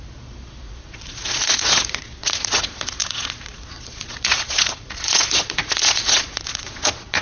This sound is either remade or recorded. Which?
remade